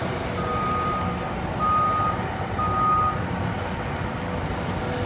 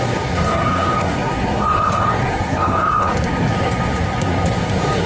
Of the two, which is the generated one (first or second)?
second